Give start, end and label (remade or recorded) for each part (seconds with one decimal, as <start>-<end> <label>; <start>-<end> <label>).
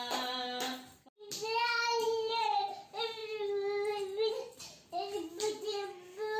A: 0.0-6.4 recorded